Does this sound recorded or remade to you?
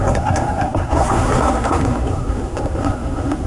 remade